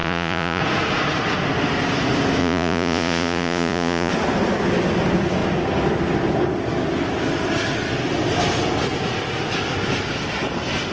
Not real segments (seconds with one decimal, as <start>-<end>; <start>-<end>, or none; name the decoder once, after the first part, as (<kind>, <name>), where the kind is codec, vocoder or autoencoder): 0.0-0.6 (vocoder, Vocos); 2.4-4.1